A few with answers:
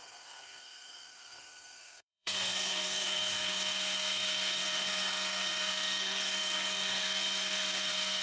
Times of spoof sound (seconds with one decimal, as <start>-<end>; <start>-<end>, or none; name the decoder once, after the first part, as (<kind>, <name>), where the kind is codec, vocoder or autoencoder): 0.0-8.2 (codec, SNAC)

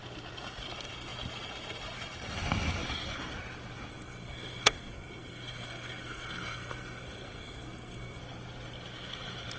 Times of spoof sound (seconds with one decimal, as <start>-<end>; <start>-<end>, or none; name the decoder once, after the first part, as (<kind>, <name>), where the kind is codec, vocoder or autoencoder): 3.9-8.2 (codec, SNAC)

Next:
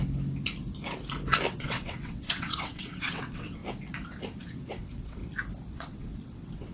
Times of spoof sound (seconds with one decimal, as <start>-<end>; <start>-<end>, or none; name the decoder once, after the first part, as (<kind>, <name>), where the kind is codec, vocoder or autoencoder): 1.5-3.6 (vocoder, WaveNeXt); 4.4-5.2; 5.7-6.7

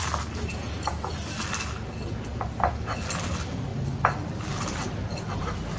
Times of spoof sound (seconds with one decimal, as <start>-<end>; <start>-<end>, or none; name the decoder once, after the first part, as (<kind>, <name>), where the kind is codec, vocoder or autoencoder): 0.0-1.7 (vocoder, BigVGAN v2)